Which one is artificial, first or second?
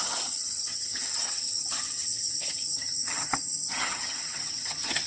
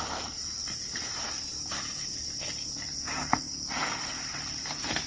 first